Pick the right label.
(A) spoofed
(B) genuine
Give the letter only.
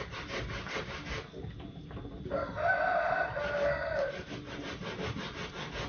B